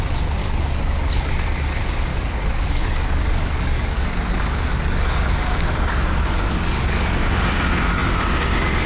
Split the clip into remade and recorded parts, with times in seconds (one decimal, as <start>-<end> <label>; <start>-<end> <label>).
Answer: 0.0-0.4 recorded; 0.4-1.3 remade; 1.3-2.1 recorded; 2.1-7.1 remade; 7.1-8.9 recorded